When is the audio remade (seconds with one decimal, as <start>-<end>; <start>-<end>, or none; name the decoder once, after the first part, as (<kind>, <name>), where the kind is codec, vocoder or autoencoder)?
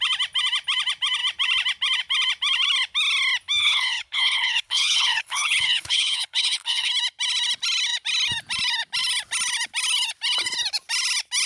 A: 3.6-6.9 (codec, HILCodec)